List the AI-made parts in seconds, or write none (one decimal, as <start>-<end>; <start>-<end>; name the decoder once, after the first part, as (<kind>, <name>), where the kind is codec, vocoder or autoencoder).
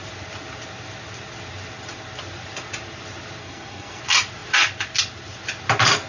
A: 3.4-4.0 (codec, SNAC)